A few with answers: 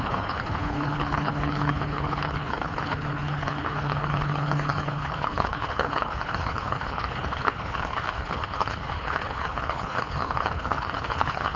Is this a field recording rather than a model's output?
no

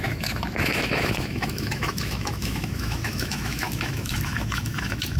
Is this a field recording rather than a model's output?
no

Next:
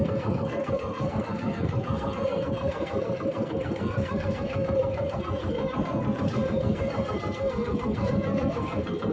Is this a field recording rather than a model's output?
no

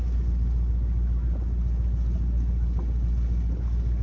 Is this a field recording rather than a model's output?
yes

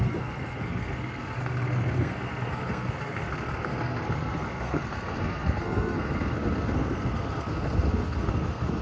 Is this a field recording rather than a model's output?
no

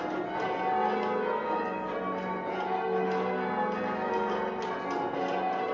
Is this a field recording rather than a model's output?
yes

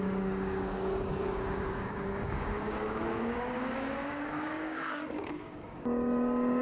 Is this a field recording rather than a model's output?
no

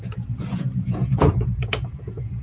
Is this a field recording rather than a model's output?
no